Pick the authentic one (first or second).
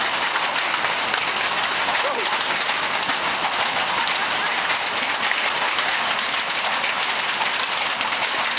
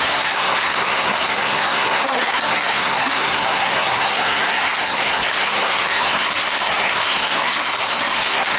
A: first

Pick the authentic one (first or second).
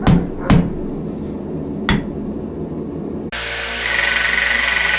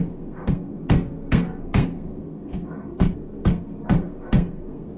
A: first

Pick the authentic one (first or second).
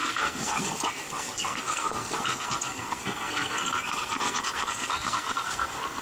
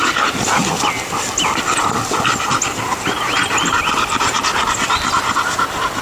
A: second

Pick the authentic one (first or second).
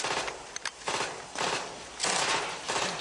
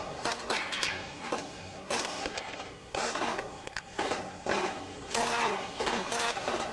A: first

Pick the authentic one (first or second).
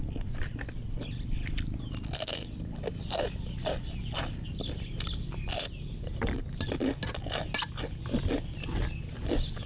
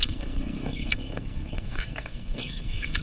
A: first